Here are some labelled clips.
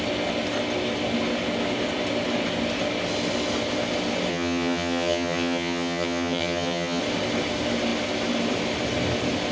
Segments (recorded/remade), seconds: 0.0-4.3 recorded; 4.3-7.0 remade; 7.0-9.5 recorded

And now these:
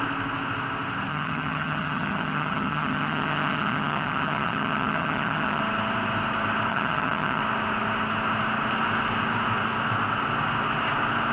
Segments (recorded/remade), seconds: 0.0-1.1 recorded; 1.1-5.6 remade; 5.6-6.7 recorded; 6.7-7.4 remade; 7.4-11.3 recorded

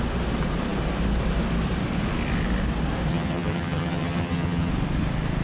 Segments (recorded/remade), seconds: 0.0-3.1 recorded; 3.1-4.7 remade; 4.7-5.4 recorded

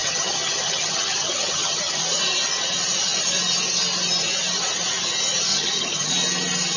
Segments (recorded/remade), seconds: 0.0-2.0 remade; 2.0-5.5 recorded; 5.5-6.1 remade; 6.1-6.8 recorded

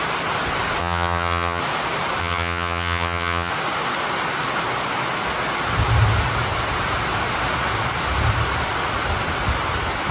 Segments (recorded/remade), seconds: 0.0-0.8 recorded; 0.8-1.6 remade; 1.6-2.2 recorded; 2.2-3.5 remade; 3.5-10.1 recorded

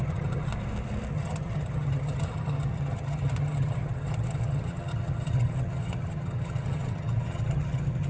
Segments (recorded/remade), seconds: 0.0-0.5 remade; 0.5-1.1 recorded; 1.1-8.1 remade

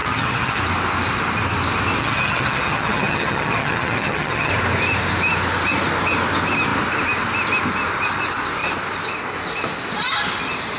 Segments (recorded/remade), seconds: 0.0-0.6 remade; 0.6-2.0 recorded; 2.0-4.5 remade; 4.5-10.8 recorded